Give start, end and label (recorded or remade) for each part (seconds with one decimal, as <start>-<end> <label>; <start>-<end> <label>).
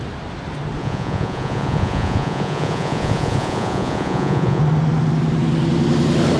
0.0-0.8 recorded; 0.8-4.6 remade; 4.6-6.4 recorded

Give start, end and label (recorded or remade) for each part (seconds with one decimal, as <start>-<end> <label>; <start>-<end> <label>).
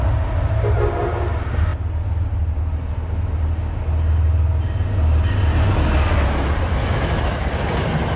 0.0-8.2 recorded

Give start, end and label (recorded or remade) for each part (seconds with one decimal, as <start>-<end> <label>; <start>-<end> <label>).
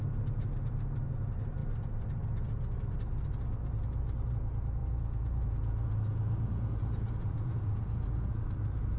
0.0-4.8 recorded; 4.8-8.3 remade; 8.3-9.0 recorded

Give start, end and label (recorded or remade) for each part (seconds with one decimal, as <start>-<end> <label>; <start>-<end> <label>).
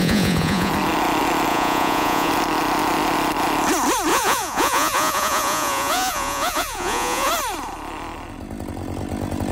0.0-0.7 remade; 0.7-1.5 recorded; 1.5-2.3 remade; 2.3-4.1 recorded; 4.1-7.3 remade; 7.3-9.5 recorded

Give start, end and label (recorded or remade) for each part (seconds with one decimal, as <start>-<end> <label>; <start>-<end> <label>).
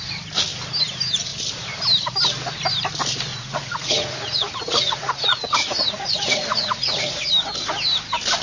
0.0-3.3 recorded; 3.3-7.0 remade; 7.0-8.4 recorded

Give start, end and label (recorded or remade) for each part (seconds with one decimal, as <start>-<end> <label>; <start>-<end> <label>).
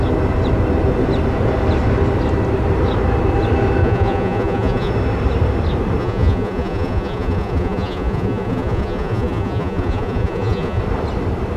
0.0-3.8 recorded; 3.8-4.9 remade; 4.9-6.0 recorded; 6.0-10.8 remade; 10.8-11.6 recorded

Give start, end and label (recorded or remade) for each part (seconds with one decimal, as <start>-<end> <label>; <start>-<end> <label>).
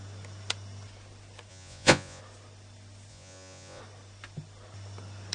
0.0-1.5 recorded; 1.5-2.2 remade; 2.2-3.1 recorded; 3.1-3.8 remade; 3.8-5.3 recorded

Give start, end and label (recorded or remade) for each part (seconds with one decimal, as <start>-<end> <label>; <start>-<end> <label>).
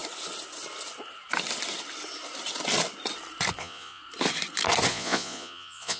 0.0-3.6 recorded; 3.6-4.0 remade; 4.0-4.9 recorded; 4.9-6.0 remade